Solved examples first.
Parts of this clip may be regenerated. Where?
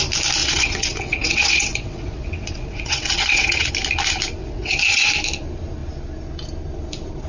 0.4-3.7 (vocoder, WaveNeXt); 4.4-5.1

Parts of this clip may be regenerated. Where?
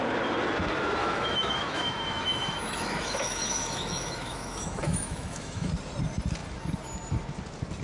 1.0-5.7 (autoencoder, DAC-VAE)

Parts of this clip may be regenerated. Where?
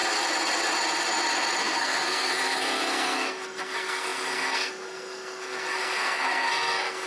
1.6-7.1 (codec, SNAC)